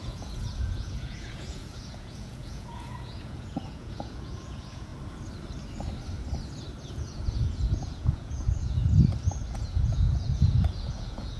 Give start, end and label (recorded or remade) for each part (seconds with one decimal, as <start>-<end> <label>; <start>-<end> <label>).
0.0-4.9 remade; 4.9-6.9 recorded; 6.9-8.8 remade; 8.8-9.5 recorded; 9.5-11.4 remade